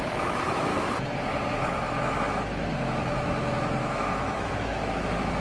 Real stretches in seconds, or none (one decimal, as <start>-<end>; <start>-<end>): 0.7-1.5